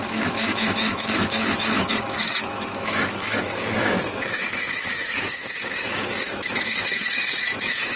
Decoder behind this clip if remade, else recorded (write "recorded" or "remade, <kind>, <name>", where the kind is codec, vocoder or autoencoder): remade, autoencoder, DAC-VAE